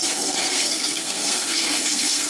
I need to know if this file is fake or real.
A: fake